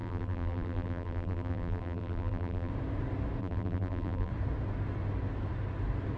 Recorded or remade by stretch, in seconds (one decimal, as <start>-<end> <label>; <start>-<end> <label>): 0.0-2.7 remade; 2.7-3.4 recorded; 3.4-4.3 remade; 4.3-6.2 recorded